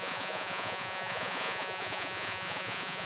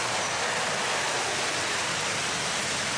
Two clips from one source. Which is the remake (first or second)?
first